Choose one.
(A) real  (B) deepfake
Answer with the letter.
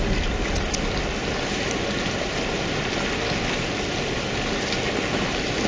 A